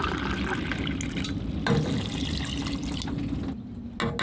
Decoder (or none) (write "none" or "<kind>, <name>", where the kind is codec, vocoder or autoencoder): none